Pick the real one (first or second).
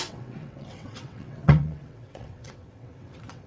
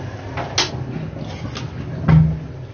second